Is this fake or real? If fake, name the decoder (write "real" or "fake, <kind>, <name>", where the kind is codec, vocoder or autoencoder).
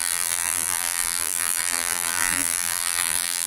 fake, vocoder, BigVGAN v2